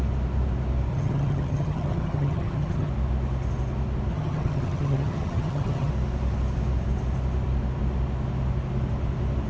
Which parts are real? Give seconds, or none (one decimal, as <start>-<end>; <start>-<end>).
0.0-0.9; 2.9-4.1; 5.9-9.5